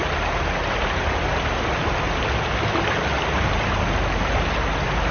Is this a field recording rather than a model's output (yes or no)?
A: yes